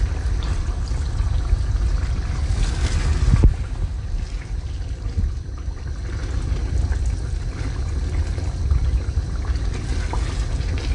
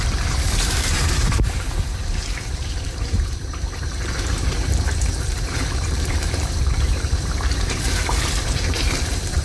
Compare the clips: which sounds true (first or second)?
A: first